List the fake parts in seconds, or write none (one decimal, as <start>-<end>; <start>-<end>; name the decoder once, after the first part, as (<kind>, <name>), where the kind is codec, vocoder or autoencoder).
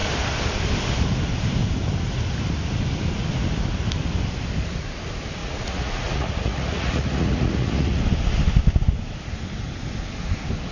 5.4-8.0 (vocoder, Vocos)